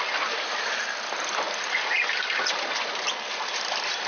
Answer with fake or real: real